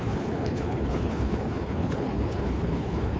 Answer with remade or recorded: remade